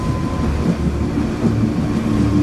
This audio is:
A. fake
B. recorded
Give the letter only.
B